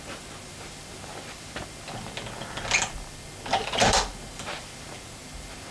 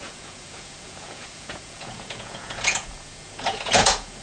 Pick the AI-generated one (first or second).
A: second